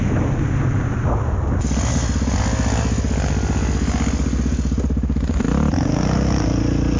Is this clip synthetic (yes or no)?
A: no